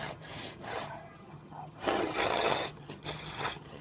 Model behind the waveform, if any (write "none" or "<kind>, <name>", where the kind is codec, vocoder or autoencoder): vocoder, HiFi-GAN